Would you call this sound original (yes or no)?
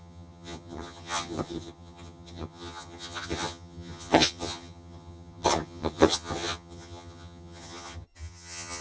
no